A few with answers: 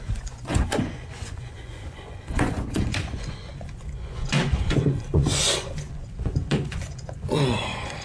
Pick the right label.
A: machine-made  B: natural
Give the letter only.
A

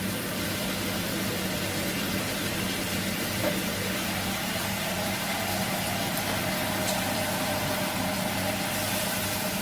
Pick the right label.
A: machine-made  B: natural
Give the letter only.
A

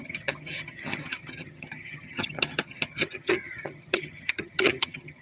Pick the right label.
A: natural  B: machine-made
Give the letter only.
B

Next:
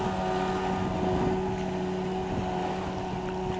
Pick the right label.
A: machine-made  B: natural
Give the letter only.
B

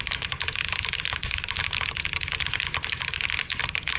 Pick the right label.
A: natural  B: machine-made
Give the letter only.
A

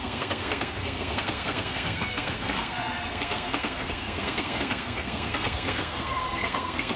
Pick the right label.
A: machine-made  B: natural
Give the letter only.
A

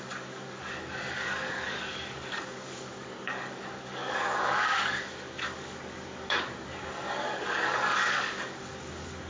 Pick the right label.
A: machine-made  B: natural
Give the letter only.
A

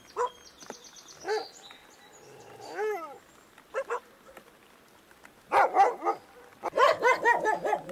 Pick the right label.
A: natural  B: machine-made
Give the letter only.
A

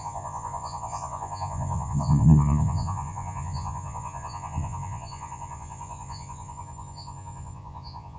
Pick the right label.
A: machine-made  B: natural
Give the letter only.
A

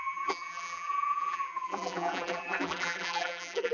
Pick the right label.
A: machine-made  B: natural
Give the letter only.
A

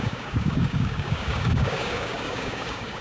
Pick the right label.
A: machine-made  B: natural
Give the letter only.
A